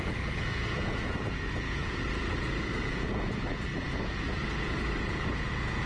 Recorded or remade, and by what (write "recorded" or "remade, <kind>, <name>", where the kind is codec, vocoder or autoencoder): remade, vocoder, Vocos